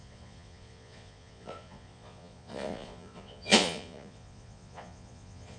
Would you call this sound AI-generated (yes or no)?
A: yes